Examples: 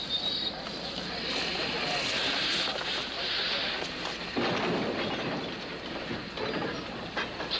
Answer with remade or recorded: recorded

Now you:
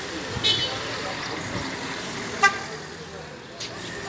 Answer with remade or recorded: recorded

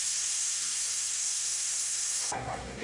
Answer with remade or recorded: remade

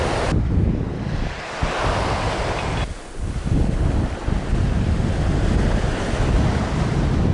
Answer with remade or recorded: recorded